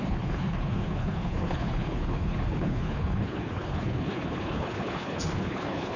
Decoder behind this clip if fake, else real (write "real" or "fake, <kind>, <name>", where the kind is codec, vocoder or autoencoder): fake, codec, HILCodec